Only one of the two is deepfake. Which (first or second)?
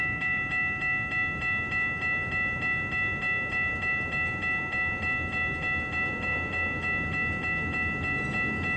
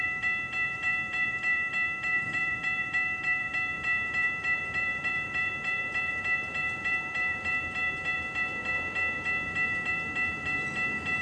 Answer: second